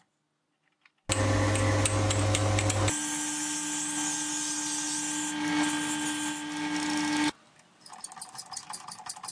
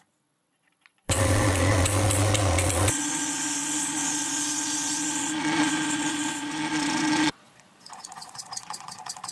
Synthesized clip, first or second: second